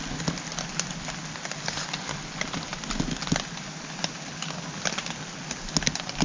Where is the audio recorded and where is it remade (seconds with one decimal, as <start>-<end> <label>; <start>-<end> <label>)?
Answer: 0.0-6.2 recorded